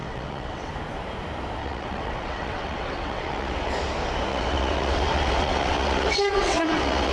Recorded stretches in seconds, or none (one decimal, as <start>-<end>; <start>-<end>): 0.7-1.6; 3.7-4.3